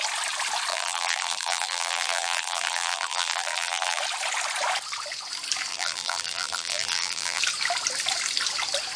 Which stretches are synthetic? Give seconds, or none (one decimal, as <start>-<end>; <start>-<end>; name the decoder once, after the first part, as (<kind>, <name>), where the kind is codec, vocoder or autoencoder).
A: 0.7-4.0 (vocoder, BigVGAN v2); 5.7-7.4